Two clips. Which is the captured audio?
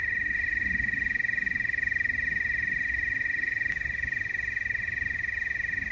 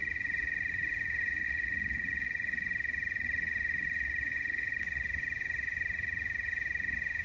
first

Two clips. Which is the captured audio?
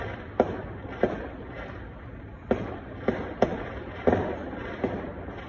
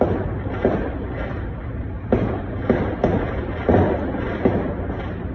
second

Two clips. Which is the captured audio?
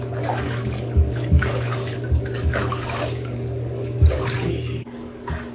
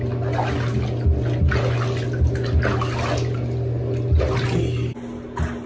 second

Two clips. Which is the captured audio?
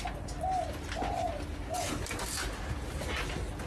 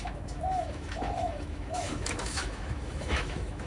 first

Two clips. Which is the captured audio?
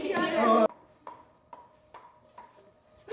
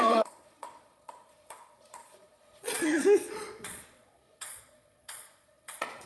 first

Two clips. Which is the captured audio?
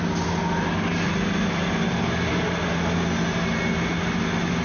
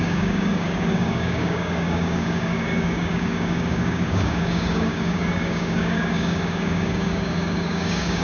first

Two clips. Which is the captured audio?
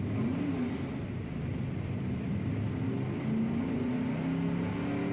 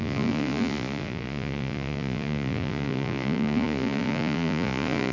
first